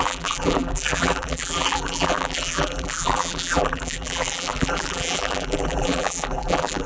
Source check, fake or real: fake